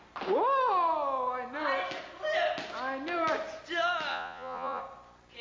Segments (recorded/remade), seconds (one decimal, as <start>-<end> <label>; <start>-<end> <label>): 0.0-4.1 recorded; 4.1-4.8 remade; 4.8-5.4 recorded